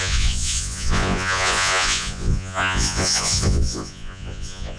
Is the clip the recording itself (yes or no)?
no